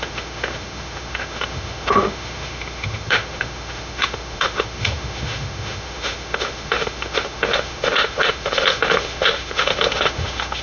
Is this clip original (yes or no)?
no